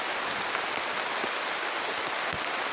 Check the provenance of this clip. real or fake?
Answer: real